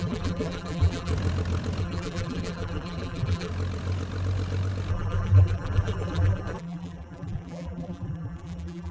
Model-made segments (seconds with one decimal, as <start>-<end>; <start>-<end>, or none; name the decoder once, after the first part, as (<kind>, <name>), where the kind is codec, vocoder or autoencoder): 0.0-1.1 (vocoder, BigVGAN v2); 1.8-3.5; 4.9-8.9